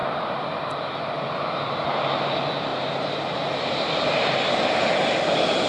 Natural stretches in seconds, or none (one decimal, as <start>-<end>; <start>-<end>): 0.7-2.7; 4.0-5.7